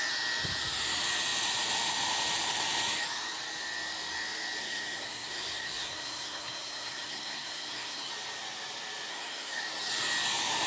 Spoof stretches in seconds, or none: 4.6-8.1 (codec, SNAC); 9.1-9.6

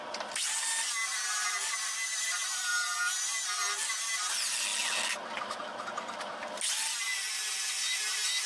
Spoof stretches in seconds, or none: none

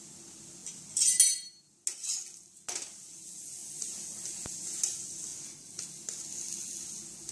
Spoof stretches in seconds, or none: none